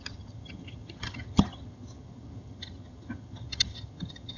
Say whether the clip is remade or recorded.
remade